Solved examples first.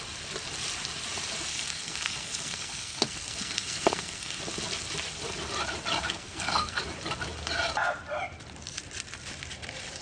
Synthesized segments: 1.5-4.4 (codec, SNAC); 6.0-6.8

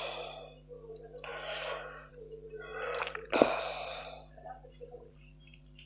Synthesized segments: 2.7-5.9 (vocoder, BigVGAN v2)

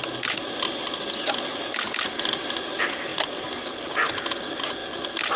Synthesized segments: none

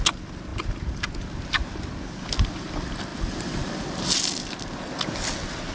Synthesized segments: 3.1-3.7 (vocoder, BigVGAN v2)

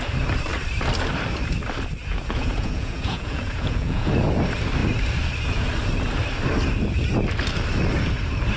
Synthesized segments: 2.1-4.1 (vocoder, Vocos)